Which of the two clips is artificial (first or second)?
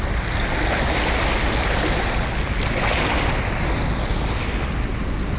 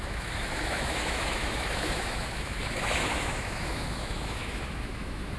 second